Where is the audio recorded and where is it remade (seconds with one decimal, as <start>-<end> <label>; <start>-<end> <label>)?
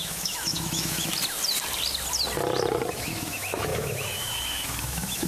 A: 0.0-1.1 remade; 1.1-2.9 recorded; 2.9-5.3 remade